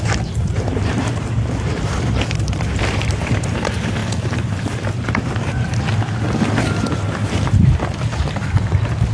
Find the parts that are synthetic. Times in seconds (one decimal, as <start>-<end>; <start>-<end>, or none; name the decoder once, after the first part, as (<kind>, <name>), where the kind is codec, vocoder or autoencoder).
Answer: 0.0-4.0 (vocoder, BigVGAN v2); 4.5-5.9; 6.7-9.1